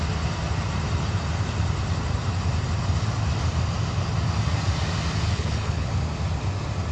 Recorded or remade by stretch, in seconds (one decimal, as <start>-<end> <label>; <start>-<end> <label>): 0.0-5.3 recorded; 5.3-5.9 remade; 5.9-6.9 recorded